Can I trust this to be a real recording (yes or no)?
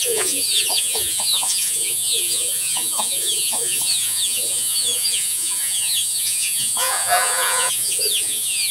no